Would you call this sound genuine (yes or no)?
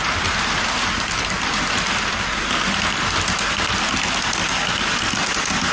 yes